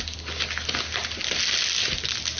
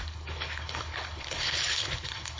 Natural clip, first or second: first